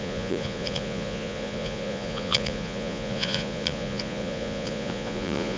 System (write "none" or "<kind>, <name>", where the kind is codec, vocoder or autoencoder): vocoder, Vocos